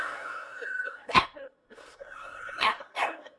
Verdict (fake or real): fake